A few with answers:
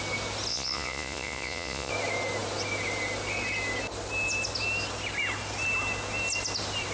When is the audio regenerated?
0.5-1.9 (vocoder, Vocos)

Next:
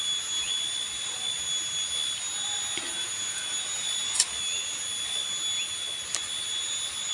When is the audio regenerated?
3.0-3.6 (vocoder, Vocos)

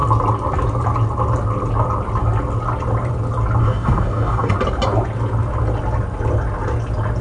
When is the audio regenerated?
3.6-4.5 (codec, DAC)

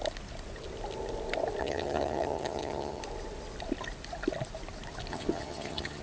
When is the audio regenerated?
1.6-3.0 (vocoder, HiFi-GAN); 5.1-6.0

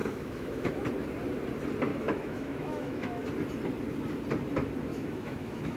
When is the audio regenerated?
0.0-0.8 (autoencoder, DAC-VAE); 1.9-3.3; 4.9-5.8

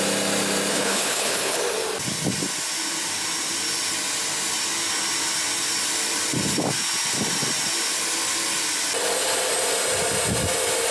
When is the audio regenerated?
0.7-1.6 (codec, HILCodec)